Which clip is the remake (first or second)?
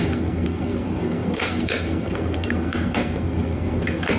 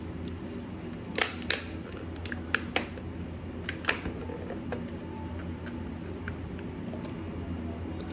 first